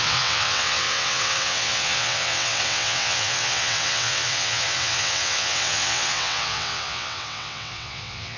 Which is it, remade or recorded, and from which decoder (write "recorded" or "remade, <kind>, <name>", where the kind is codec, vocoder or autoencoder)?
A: remade, vocoder, WaveNeXt